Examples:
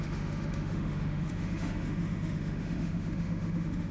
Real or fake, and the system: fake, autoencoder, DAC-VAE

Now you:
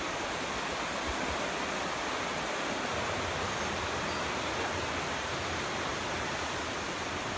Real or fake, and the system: real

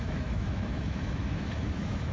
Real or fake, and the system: fake, autoencoder, DAC-VAE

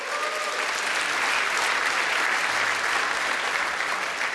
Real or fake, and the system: real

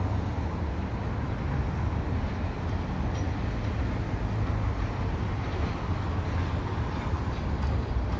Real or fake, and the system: real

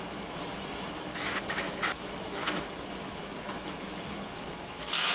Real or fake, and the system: fake, autoencoder, DAC-VAE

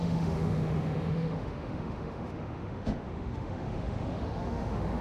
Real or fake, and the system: fake, autoencoder, DAC-VAE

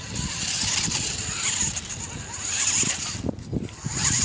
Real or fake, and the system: real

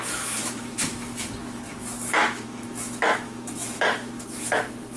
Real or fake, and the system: fake, autoencoder, DAC-VAE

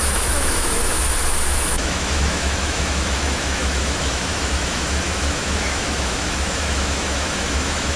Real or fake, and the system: fake, autoencoder, DAC-VAE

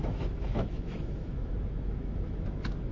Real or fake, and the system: fake, autoencoder, DAC-VAE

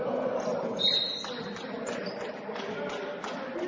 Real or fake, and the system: real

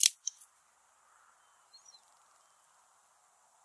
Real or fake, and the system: real